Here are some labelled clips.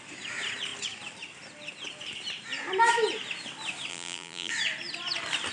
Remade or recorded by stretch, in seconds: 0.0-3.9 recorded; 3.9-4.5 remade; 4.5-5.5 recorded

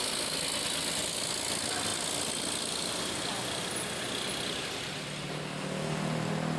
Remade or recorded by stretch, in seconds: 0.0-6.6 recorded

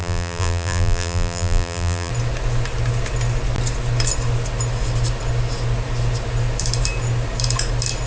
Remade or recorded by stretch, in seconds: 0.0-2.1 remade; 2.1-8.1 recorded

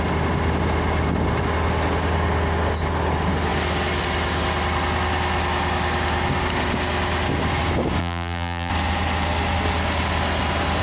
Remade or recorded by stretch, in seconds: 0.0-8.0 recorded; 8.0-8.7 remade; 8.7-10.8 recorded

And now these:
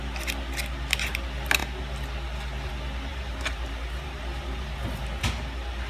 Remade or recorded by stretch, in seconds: 0.0-3.1 recorded; 3.1-5.2 remade; 5.2-5.9 recorded

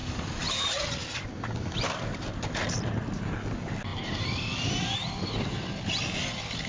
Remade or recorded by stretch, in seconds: 0.0-3.9 recorded; 3.9-5.8 remade; 5.8-6.7 recorded